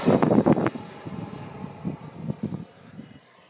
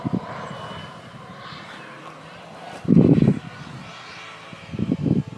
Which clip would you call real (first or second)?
second